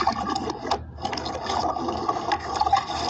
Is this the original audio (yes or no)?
yes